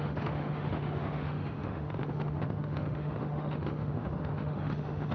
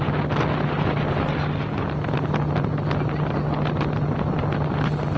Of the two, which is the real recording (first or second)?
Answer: second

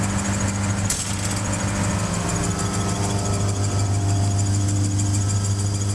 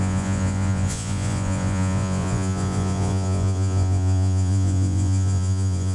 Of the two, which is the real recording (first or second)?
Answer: first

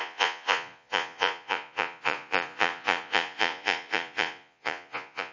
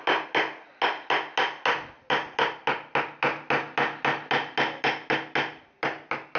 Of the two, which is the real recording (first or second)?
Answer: second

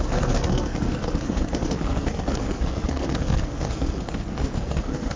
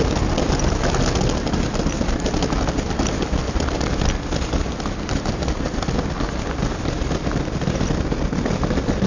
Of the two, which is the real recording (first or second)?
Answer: second